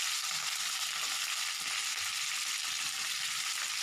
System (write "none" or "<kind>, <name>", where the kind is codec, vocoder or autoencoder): none